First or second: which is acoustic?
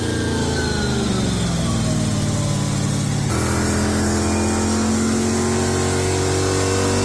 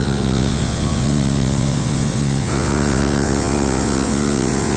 first